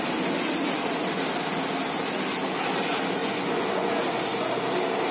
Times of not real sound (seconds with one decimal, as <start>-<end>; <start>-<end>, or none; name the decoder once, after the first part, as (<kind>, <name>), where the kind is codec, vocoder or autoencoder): 3.2-3.9 (vocoder, Vocos)